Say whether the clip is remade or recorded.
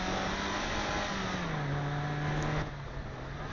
recorded